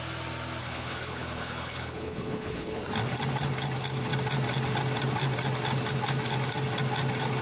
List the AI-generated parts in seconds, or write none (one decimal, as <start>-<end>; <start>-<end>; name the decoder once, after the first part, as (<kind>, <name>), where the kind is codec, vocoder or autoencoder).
0.6-2.8 (codec, HILCodec)